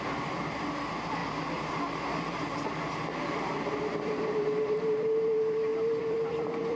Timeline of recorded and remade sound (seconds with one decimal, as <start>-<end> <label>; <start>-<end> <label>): 0.0-1.2 remade; 1.2-3.8 recorded; 3.8-6.8 remade